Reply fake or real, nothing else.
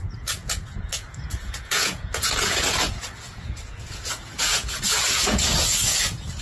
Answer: fake